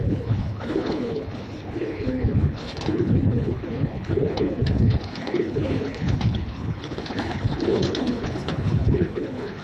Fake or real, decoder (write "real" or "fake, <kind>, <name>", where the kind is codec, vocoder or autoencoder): fake, codec, HILCodec